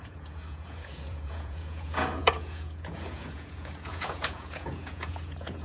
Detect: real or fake fake